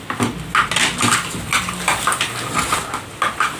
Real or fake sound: real